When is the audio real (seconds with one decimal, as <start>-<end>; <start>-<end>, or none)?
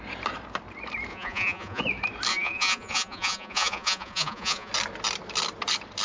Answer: 0.0-1.1; 1.8-2.3; 4.7-6.0